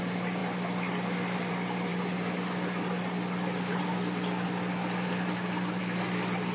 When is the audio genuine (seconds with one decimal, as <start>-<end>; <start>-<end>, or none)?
0.0-6.5